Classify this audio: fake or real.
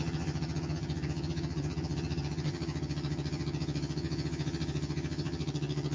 fake